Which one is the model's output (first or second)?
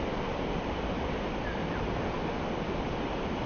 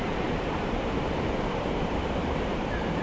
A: second